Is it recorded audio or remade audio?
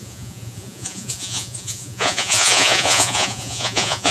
remade